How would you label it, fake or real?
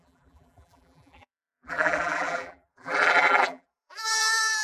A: fake